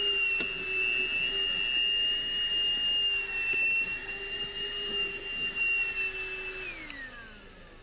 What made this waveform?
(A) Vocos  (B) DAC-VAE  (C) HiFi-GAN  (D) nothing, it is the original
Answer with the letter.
D